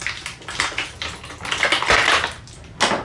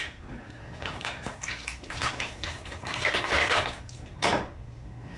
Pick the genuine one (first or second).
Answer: first